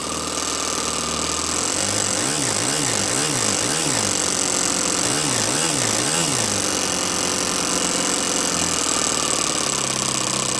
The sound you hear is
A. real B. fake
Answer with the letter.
A